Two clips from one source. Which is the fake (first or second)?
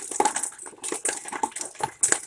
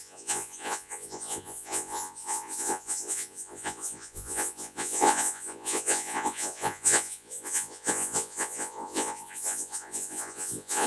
second